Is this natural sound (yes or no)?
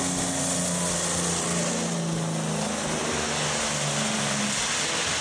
yes